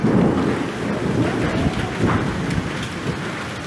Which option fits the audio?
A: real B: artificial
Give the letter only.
A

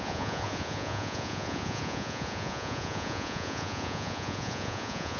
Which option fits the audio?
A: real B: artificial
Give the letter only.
B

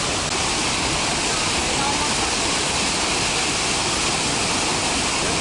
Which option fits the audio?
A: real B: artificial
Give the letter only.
A